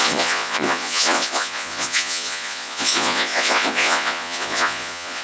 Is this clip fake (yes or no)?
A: yes